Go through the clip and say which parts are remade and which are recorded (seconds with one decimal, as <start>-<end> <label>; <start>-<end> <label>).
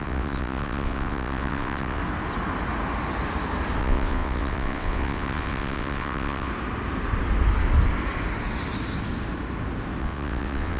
0.0-2.0 remade; 2.0-3.8 recorded; 3.8-6.5 remade; 6.5-10.0 recorded; 10.0-10.8 remade